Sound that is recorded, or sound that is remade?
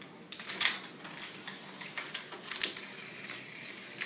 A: recorded